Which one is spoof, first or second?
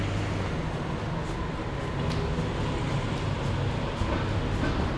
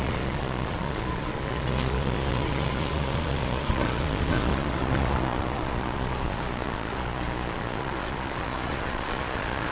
second